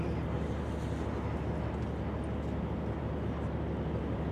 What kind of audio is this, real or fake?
real